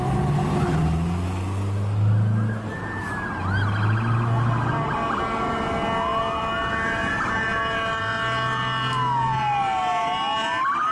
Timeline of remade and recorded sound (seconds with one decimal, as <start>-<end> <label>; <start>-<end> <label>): 0.0-10.9 recorded